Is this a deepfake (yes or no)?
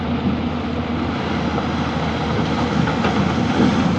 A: no